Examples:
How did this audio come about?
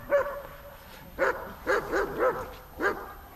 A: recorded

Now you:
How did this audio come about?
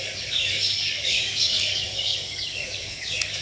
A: remade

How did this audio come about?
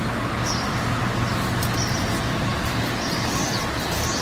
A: recorded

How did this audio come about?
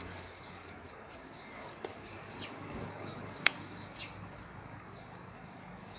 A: remade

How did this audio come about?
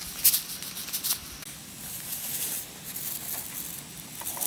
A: recorded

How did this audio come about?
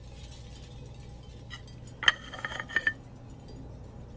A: recorded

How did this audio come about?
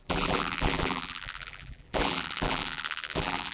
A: remade